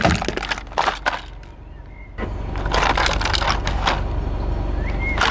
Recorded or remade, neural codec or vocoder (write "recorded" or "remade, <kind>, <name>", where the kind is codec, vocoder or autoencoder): recorded